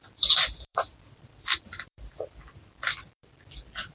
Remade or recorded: remade